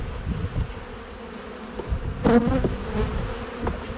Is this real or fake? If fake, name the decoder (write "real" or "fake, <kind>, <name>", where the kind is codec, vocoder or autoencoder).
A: real